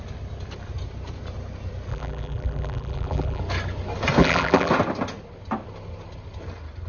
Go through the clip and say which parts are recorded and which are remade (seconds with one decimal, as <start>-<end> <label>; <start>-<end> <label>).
0.0-1.9 recorded; 1.9-3.4 remade; 3.4-4.2 recorded; 4.2-4.7 remade; 4.7-6.9 recorded